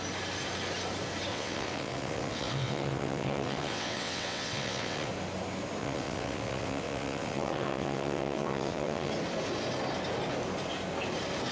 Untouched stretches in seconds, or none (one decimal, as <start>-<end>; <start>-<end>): 0.0-1.3; 5.1-5.8; 9.1-11.5